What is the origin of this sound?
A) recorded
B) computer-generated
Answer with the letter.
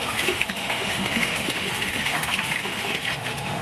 B